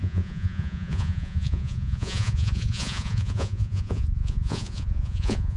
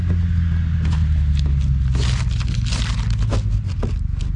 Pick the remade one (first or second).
first